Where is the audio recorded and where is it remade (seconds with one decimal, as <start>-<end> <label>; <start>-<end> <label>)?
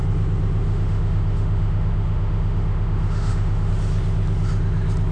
0.0-0.6 recorded; 0.6-3.7 remade; 3.7-5.1 recorded